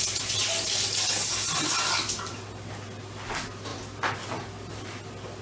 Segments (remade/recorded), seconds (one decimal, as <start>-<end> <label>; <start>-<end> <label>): 0.0-5.4 recorded